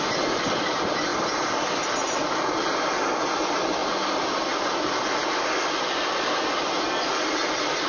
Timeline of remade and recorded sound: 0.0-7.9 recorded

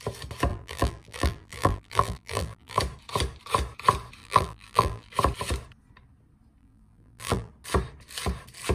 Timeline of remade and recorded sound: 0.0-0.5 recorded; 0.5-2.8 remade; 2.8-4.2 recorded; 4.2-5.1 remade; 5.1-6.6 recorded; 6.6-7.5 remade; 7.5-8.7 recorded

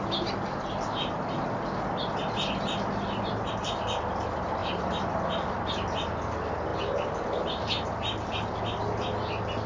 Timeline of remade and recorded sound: 0.0-4.6 recorded; 4.6-5.2 remade; 5.2-9.7 recorded